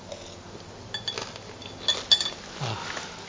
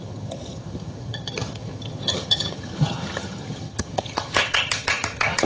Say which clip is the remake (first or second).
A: second